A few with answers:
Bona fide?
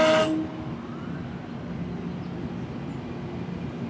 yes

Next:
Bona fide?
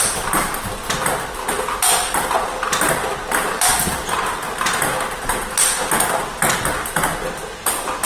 yes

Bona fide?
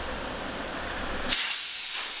yes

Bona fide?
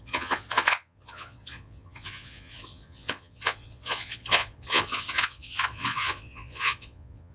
no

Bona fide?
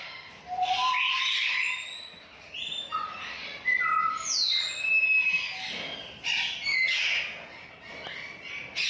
yes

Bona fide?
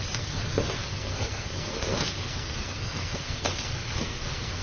no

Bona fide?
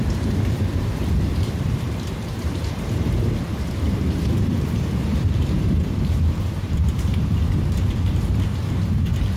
no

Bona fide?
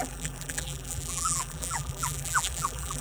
no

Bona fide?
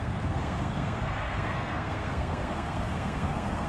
no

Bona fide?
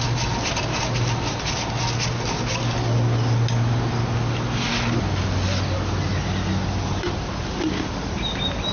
yes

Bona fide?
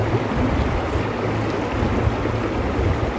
yes